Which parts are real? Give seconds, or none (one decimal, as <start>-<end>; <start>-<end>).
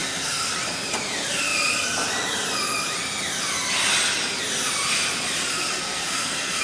0.5-5.7